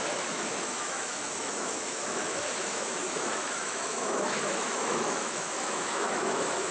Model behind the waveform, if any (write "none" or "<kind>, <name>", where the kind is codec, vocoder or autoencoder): autoencoder, DAC-VAE